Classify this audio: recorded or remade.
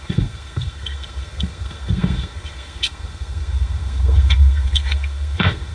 remade